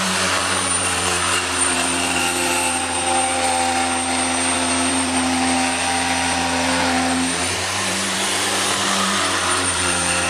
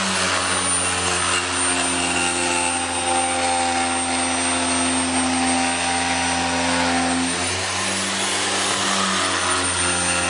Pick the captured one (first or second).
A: second